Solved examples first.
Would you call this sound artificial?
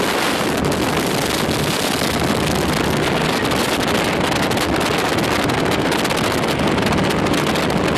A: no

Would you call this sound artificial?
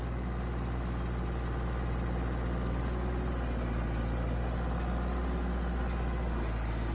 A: no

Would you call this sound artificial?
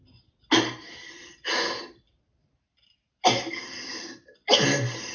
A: no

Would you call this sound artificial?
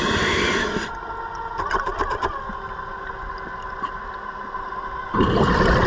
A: no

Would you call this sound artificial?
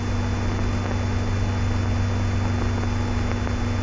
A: no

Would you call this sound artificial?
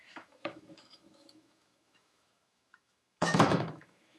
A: yes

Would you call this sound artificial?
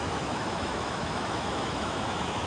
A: yes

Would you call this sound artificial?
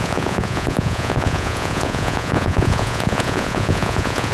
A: yes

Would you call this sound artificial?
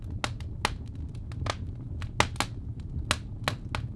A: no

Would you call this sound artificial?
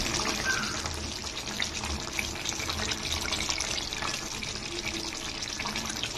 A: no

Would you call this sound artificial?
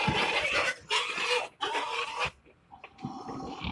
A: no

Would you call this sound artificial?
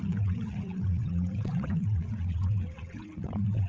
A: yes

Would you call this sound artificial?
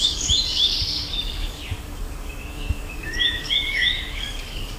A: yes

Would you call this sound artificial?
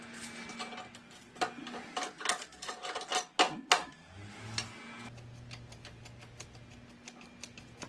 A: no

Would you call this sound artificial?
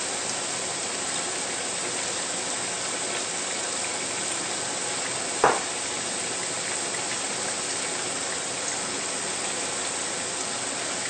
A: no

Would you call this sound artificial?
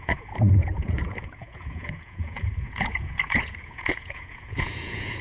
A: yes